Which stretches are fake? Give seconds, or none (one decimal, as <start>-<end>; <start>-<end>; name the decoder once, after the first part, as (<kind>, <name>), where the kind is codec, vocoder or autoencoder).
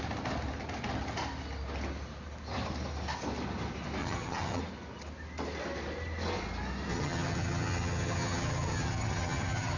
4.0-4.6 (vocoder, HiFi-GAN); 6.9-9.8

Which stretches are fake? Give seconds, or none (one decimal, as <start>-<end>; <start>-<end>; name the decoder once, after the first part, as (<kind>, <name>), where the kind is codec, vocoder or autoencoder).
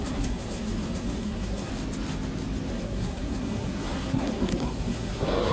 0.0-1.7 (codec, SNAC); 2.7-5.5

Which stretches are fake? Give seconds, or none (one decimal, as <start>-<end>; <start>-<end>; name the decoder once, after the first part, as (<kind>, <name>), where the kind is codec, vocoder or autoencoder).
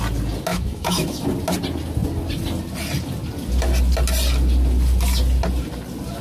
0.5-1.2 (autoencoder, DAC-VAE)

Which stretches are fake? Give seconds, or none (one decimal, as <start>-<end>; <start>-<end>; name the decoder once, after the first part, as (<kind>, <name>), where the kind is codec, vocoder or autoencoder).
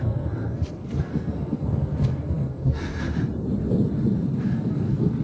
0.0-2.9 (codec, SNAC); 4.4-5.2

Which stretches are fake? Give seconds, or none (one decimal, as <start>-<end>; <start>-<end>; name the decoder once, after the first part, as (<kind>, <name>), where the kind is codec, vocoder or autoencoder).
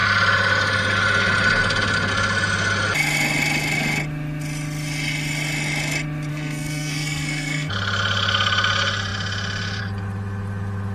6.3-7.7 (codec, SNAC)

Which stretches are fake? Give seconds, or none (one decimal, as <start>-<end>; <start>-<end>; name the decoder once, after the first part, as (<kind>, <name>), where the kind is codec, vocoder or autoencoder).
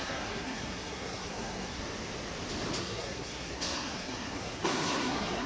0.0-1.8 (codec, SNAC); 2.8-5.5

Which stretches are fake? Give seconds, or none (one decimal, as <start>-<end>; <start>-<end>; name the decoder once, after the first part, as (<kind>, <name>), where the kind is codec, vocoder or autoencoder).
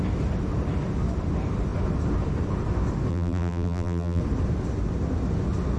3.1-4.2 (vocoder, BigVGAN v2)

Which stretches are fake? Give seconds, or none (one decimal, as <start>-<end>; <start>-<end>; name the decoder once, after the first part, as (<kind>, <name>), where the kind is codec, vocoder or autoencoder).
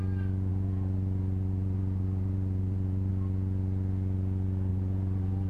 0.5-3.1 (vocoder, BigVGAN v2); 4.7-5.5